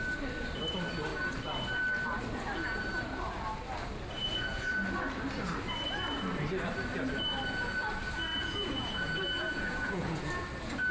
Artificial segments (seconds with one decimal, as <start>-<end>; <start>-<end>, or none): 4.2-4.7; 8.3-10.3